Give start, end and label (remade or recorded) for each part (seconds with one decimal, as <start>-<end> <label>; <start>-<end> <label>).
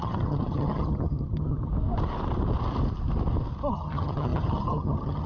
0.0-1.7 remade; 1.7-3.7 recorded; 3.7-5.3 remade